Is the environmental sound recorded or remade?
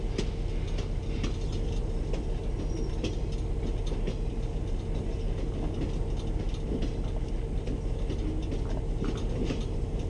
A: recorded